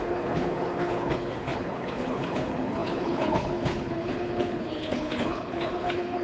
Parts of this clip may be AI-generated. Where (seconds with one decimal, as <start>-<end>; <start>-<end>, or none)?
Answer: 0.0-6.2